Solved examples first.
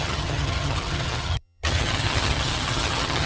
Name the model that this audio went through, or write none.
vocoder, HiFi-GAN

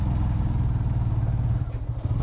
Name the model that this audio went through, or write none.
none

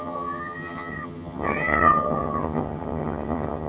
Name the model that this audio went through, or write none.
vocoder, HiFi-GAN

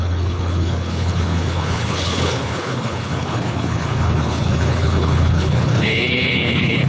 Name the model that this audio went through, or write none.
codec, HILCodec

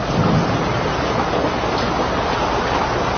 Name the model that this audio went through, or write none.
none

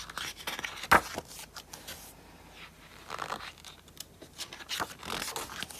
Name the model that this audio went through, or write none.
none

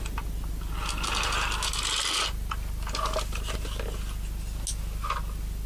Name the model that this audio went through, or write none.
none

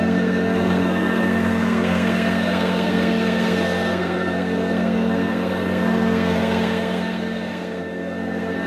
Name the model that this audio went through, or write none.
codec, SNAC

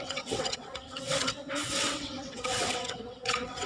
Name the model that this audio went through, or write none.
vocoder, WaveNeXt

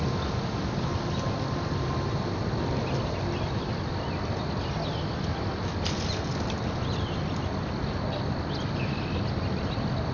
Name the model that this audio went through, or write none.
none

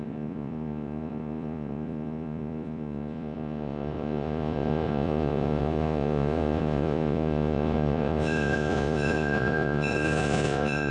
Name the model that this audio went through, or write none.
vocoder, Vocos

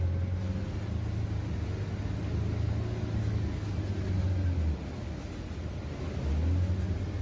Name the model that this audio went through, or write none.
none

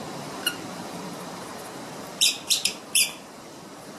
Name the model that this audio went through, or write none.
vocoder, BigVGAN v2